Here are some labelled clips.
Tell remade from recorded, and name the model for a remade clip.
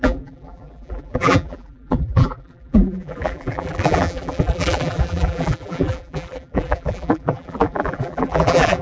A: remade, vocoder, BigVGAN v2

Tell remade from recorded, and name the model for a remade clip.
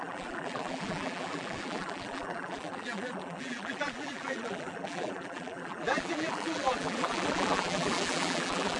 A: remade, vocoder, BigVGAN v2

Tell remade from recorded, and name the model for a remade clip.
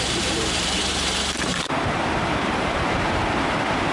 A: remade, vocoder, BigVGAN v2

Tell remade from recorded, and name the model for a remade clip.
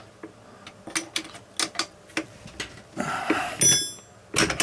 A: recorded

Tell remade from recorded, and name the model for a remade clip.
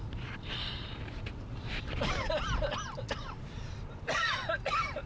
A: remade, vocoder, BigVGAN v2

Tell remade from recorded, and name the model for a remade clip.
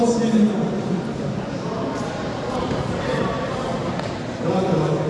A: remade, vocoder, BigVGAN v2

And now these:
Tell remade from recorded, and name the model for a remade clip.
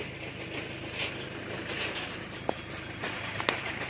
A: recorded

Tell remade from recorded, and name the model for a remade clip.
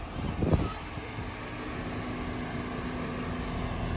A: recorded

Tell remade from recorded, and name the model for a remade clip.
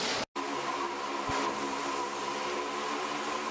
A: recorded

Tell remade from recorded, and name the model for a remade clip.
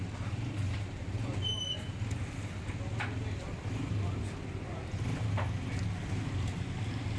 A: recorded